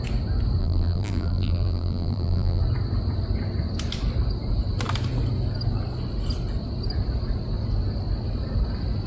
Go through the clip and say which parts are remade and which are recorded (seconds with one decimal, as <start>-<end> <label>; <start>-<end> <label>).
0.0-0.6 recorded; 0.6-2.6 remade; 2.6-9.1 recorded